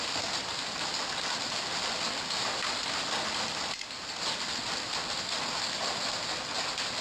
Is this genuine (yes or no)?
yes